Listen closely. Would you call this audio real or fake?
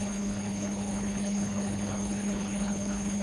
fake